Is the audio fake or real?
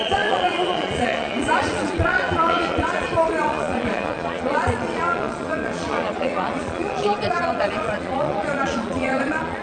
fake